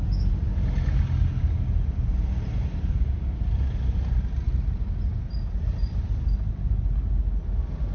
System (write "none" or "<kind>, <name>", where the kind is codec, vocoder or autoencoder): none